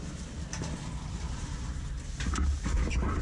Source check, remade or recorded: recorded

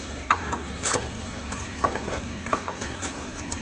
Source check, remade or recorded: remade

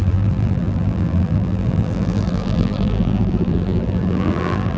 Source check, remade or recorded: remade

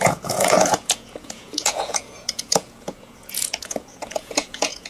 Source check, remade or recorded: remade